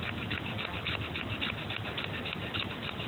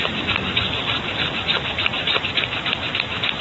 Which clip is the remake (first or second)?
second